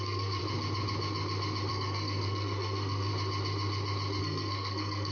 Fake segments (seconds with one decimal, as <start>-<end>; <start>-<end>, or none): 0.0-0.4; 1.7-3.1; 4.2-5.1